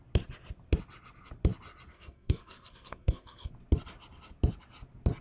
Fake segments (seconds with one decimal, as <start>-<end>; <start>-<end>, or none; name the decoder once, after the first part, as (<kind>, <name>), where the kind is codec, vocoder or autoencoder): 1.9-3.5 (codec, SNAC)